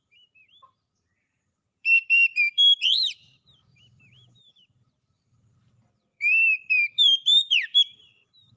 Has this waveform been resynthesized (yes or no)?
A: yes